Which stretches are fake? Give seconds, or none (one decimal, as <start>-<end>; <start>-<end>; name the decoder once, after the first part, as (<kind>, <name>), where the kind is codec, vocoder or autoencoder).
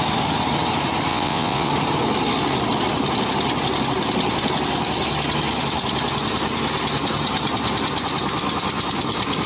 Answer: 1.1-1.7 (vocoder, WaveNeXt)